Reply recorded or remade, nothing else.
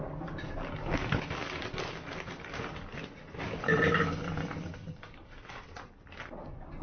recorded